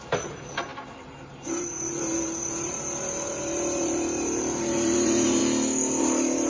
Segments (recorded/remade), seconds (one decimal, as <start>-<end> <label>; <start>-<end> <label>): 0.0-5.4 remade; 5.4-6.0 recorded; 6.0-6.5 remade